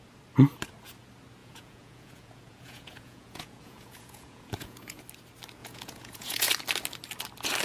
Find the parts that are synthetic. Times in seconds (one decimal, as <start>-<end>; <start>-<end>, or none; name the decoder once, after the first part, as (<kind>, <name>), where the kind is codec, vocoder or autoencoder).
1.4-5.0 (vocoder, Vocos); 5.6-6.5